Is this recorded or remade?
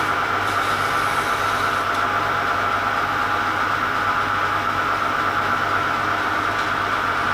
recorded